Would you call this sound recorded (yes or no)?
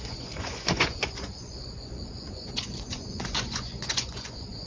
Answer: no